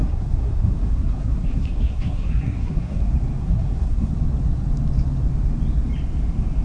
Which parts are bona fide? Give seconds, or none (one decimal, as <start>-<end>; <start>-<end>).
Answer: 3.0-3.4; 4.1-6.6